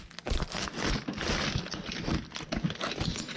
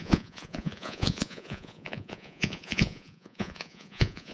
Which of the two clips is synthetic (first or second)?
second